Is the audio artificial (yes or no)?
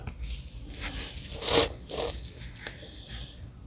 no